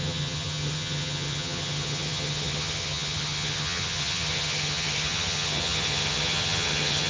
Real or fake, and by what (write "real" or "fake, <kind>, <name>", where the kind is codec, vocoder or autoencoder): fake, vocoder, HiFi-GAN